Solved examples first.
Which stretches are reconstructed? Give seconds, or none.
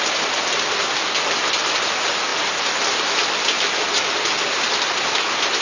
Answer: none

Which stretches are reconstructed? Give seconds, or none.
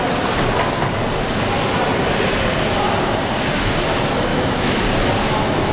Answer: 4.3-4.8 (autoencoder, DAC-VAE)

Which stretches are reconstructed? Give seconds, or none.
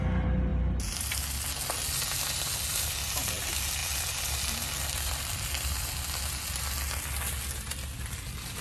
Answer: none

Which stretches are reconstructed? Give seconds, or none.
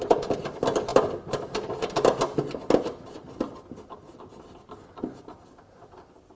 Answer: none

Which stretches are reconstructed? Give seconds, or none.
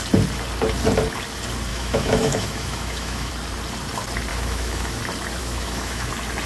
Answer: 1.7-3.3 (autoencoder, DAC-VAE); 4.3-5.0; 5.4-6.1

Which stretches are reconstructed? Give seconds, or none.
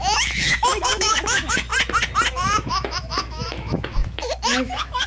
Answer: 0.0-1.7 (autoencoder, DAC-VAE); 2.3-5.1